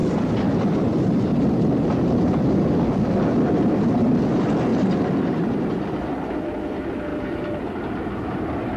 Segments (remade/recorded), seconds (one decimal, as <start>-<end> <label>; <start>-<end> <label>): 0.0-1.5 remade; 1.5-4.7 recorded; 4.7-6.0 remade; 6.0-7.1 recorded; 7.1-8.4 remade; 8.4-8.8 recorded